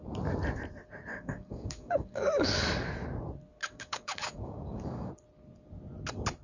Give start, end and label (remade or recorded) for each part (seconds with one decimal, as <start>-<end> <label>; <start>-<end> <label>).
0.0-1.1 recorded; 1.1-2.9 remade; 2.9-3.6 recorded; 3.6-5.1 remade; 5.1-6.4 recorded